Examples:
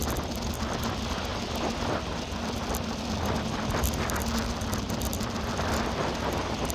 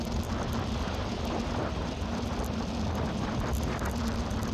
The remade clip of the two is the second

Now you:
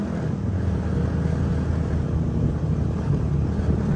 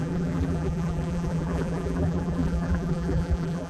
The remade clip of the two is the second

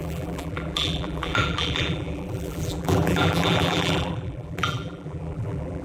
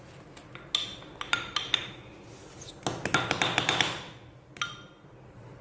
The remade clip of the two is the first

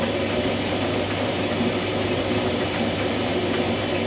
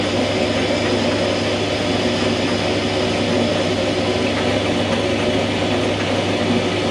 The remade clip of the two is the first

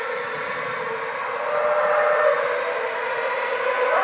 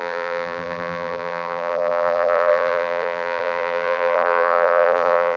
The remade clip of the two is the second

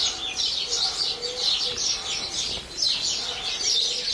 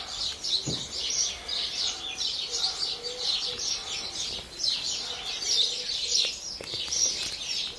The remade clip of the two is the second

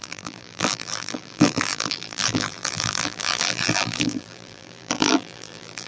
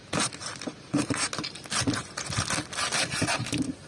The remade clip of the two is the first